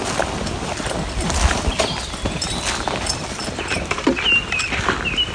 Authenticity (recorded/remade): recorded